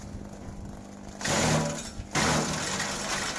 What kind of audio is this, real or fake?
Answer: real